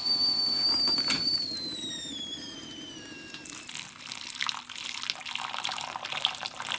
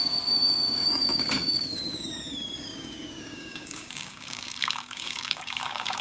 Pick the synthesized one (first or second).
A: second